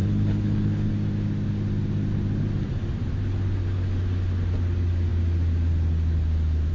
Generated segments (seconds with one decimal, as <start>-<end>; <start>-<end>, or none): 0.0-0.9